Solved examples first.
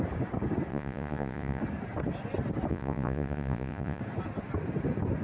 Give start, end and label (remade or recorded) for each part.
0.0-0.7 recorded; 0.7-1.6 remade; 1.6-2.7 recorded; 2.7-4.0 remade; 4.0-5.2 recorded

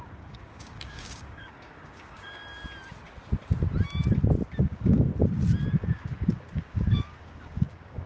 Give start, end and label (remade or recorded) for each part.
0.0-2.4 remade; 2.4-4.6 recorded; 4.6-5.1 remade; 5.1-5.7 recorded; 5.7-8.1 remade

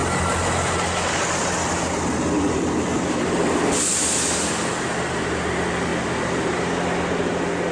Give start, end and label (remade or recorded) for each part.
0.0-7.7 recorded

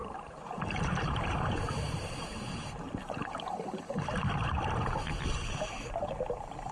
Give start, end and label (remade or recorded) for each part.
0.0-4.0 remade; 4.0-6.7 recorded

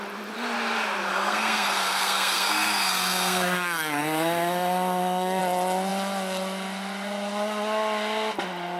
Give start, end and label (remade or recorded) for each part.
0.0-1.1 recorded; 1.1-5.4 remade; 5.4-8.8 recorded

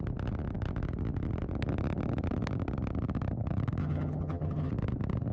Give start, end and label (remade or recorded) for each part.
0.0-3.8 recorded; 3.8-4.7 remade; 4.7-5.3 recorded

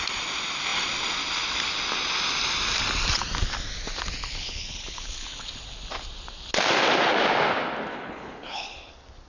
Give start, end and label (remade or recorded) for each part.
0.0-4.2 recorded; 4.2-5.5 remade; 5.5-7.9 recorded; 7.9-8.9 remade; 8.9-9.3 recorded

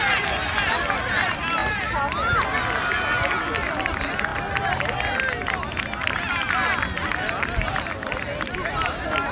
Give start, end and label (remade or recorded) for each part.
0.0-9.3 recorded